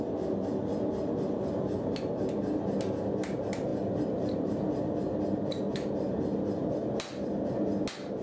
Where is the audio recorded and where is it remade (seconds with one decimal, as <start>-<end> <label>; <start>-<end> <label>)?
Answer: 0.0-8.2 recorded